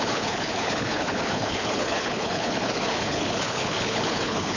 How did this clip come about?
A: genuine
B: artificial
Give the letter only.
B